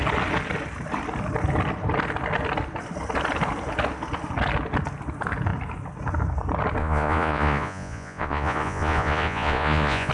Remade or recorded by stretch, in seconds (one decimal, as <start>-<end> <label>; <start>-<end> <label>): 0.0-6.8 recorded; 6.8-10.1 remade

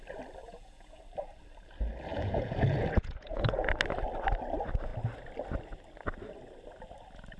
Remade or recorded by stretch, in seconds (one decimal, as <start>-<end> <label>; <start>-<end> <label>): 0.0-0.4 recorded; 0.4-1.0 remade; 1.0-2.1 recorded; 2.1-3.7 remade; 3.7-7.4 recorded

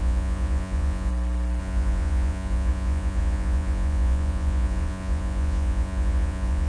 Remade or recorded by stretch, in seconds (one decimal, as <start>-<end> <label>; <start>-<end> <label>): 0.0-1.1 remade; 1.1-1.6 recorded; 1.6-6.7 remade

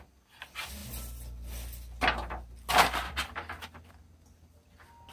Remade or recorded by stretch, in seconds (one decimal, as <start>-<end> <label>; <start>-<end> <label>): 0.0-5.1 recorded

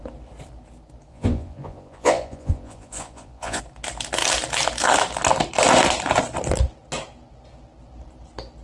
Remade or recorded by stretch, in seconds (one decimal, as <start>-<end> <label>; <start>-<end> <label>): 0.0-1.1 recorded; 1.1-3.6 remade; 3.6-8.6 recorded

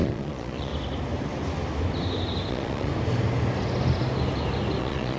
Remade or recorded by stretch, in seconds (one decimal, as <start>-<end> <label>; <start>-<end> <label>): 0.0-0.7 remade; 0.7-2.5 recorded; 2.5-2.9 remade; 2.9-4.8 recorded; 4.8-5.2 remade

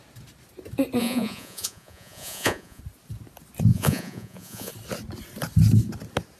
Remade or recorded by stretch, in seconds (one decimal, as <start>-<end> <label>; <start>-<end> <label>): 0.0-1.0 recorded; 1.0-2.8 remade; 2.8-3.7 recorded; 3.7-4.7 remade; 4.7-6.4 recorded